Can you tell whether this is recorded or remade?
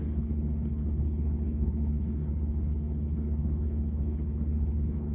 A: remade